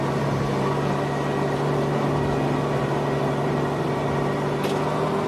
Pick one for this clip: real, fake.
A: real